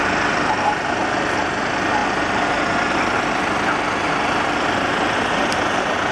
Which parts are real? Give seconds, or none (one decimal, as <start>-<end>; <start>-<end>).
0.0-6.1